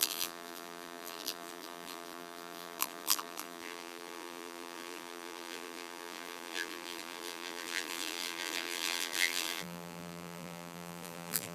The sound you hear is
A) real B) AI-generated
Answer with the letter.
B